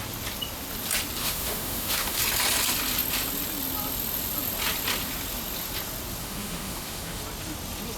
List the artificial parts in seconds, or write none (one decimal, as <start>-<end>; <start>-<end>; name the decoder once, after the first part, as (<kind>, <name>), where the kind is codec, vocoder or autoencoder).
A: 1.2-2.2 (autoencoder, DAC-VAE); 6.2-7.2